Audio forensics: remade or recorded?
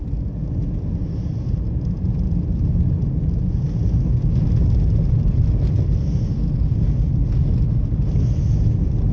recorded